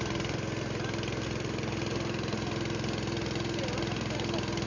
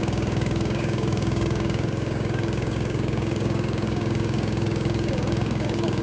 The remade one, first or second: second